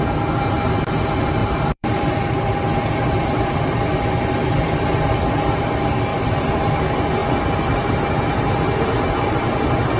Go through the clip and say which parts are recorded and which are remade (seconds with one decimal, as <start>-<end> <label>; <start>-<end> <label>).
0.0-1.4 recorded; 1.4-5.6 remade; 5.6-6.1 recorded; 6.1-6.7 remade; 6.7-7.2 recorded; 7.2-9.6 remade; 9.6-10.0 recorded